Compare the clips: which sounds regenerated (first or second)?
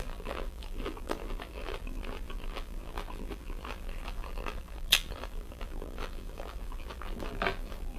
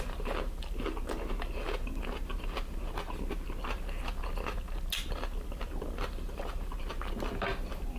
first